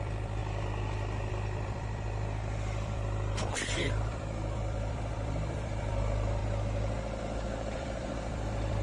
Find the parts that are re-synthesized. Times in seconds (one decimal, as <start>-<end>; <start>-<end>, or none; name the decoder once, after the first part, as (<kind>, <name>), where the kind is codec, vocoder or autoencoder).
0.0-0.4 (vocoder, BigVGAN v2); 1.3-6.4; 7.2-8.8